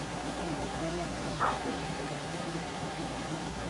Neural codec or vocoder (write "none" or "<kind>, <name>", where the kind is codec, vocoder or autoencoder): codec, SNAC